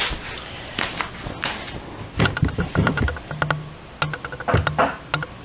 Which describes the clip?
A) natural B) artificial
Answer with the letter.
A